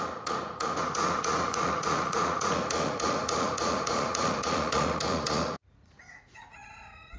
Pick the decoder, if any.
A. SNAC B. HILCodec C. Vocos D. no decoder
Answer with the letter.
C